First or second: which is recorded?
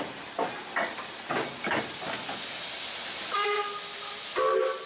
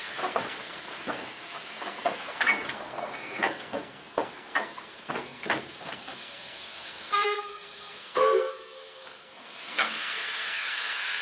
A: first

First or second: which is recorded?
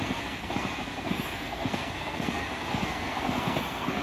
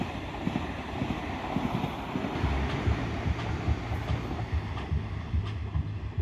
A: second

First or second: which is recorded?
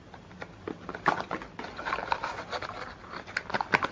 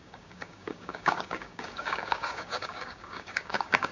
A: first